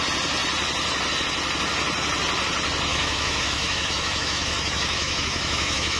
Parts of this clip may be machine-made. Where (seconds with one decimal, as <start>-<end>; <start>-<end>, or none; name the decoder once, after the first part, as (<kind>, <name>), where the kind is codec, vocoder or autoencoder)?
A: 2.9-6.0 (autoencoder, DAC-VAE)